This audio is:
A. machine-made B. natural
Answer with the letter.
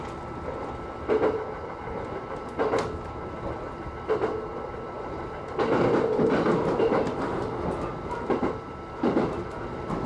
B